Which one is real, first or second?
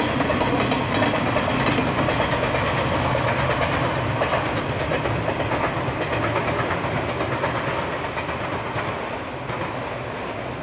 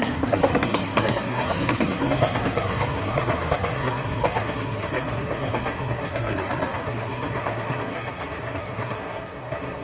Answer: first